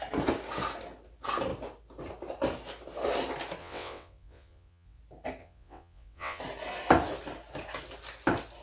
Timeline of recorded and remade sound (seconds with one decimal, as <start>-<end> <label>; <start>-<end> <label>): 0.0-3.6 recorded; 3.6-5.0 remade; 5.0-5.4 recorded; 5.4-6.4 remade; 6.4-8.6 recorded